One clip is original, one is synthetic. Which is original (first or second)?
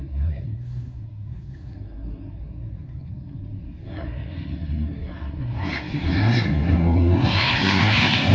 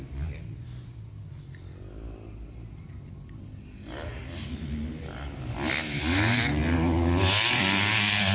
second